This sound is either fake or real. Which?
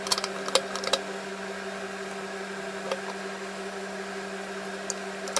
real